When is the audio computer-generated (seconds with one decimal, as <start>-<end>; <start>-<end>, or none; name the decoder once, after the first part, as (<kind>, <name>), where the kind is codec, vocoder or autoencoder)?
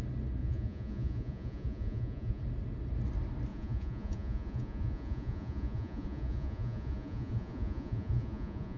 0.4-2.4 (vocoder, Vocos); 3.5-8.8